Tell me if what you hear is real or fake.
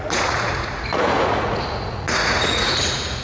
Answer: fake